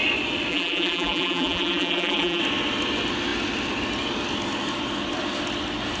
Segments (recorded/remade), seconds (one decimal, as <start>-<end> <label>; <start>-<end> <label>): 0.0-0.5 recorded; 0.5-2.4 remade; 2.4-6.0 recorded